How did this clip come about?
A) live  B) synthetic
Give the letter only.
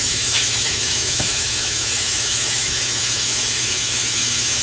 B